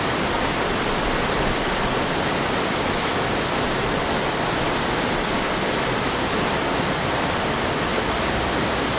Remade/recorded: recorded